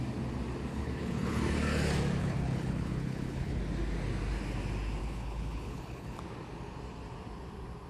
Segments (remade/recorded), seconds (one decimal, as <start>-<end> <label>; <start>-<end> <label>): 0.0-0.7 recorded; 0.7-1.4 remade; 1.4-2.2 recorded; 2.2-3.6 remade; 3.6-5.0 recorded; 5.0-6.2 remade; 6.2-7.9 recorded